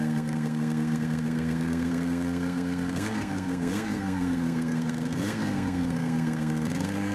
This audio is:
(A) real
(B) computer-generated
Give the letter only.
B